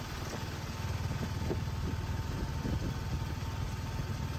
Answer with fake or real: real